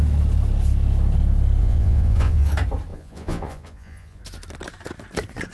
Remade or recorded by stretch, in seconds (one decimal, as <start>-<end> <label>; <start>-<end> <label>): 0.0-1.6 recorded; 1.6-2.5 remade; 2.5-2.9 recorded; 2.9-4.2 remade; 4.2-5.5 recorded